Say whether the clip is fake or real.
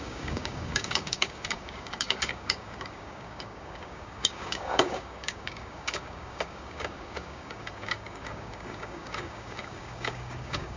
fake